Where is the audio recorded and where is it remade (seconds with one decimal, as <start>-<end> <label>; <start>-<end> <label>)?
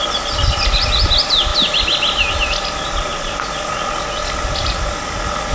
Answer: 0.0-5.5 recorded